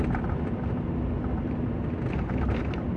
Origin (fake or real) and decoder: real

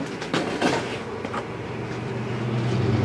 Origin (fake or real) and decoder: real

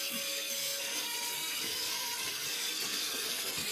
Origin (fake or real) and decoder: fake, codec, SNAC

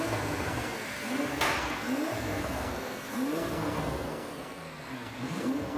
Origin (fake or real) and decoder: fake, codec, SNAC